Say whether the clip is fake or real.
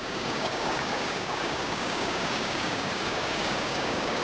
fake